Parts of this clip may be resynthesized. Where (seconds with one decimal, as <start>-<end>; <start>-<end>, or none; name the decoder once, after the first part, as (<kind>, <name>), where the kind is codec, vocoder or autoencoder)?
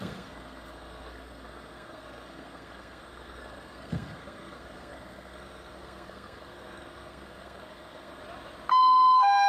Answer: 0.0-8.2 (codec, SNAC); 8.8-9.5